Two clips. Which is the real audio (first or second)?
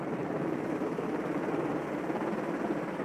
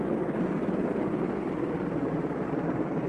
second